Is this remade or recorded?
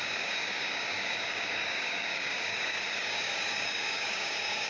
remade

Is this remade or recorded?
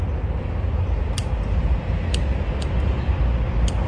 recorded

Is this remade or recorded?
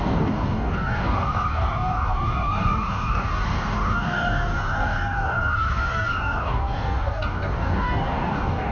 remade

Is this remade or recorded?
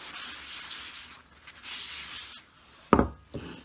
recorded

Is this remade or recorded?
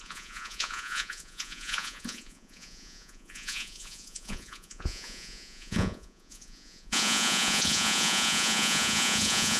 remade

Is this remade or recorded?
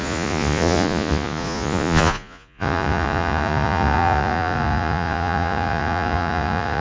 remade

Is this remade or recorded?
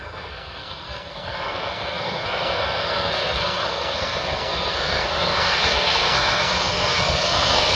remade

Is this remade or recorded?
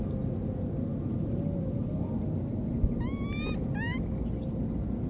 recorded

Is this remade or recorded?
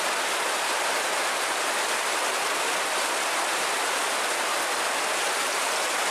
remade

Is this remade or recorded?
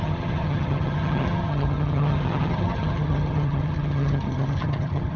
remade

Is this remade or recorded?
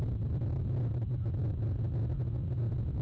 recorded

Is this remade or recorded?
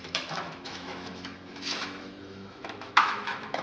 remade